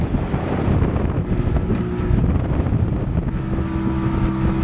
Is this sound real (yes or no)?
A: yes